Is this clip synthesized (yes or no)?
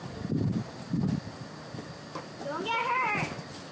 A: no